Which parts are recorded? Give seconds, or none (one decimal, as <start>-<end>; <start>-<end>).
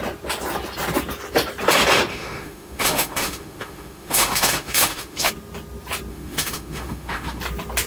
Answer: 0.0-2.1; 5.3-6.1; 7.4-7.9